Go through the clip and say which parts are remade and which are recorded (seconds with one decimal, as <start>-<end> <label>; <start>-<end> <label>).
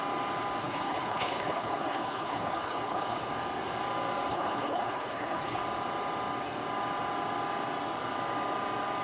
0.0-0.6 recorded; 0.6-3.3 remade; 3.3-4.3 recorded; 4.3-5.6 remade; 5.6-9.0 recorded